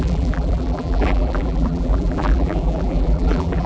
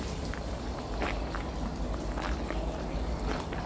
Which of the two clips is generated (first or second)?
first